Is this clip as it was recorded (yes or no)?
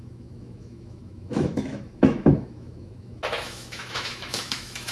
no